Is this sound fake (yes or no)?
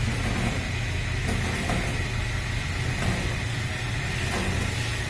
no